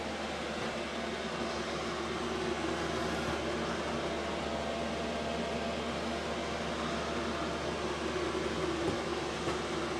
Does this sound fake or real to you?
real